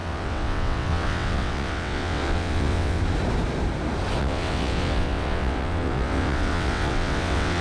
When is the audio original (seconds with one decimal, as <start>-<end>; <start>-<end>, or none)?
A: 3.0-4.2